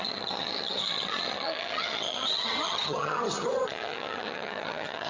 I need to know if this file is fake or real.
fake